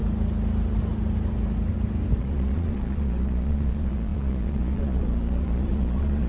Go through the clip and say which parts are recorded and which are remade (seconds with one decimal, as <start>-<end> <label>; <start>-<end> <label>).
0.0-2.2 recorded; 2.2-6.3 remade